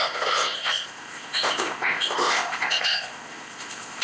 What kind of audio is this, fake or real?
fake